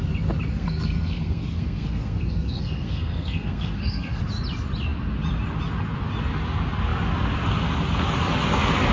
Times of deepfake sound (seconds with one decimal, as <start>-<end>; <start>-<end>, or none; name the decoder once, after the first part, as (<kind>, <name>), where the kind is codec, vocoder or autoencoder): 0.5-4.2 (codec, SNAC)